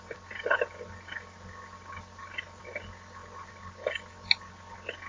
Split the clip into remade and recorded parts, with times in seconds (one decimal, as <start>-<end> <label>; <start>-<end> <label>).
0.0-5.1 recorded